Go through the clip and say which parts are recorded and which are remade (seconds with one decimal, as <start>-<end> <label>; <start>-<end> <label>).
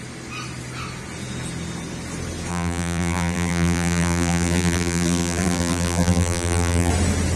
0.0-2.5 recorded; 2.5-6.9 remade; 6.9-7.4 recorded